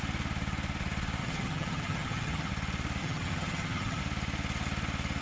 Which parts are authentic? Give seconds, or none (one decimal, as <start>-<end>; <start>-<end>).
0.0-1.2; 2.5-3.0; 4.0-5.2